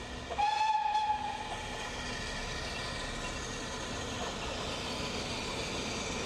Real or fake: real